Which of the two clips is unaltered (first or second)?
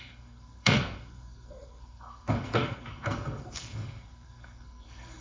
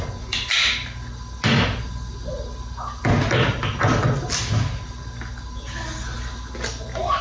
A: second